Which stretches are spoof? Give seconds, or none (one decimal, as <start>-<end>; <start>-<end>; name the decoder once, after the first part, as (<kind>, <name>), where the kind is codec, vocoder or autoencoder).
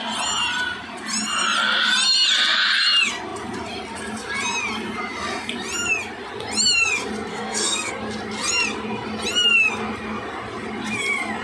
7.3-7.9 (codec, SNAC)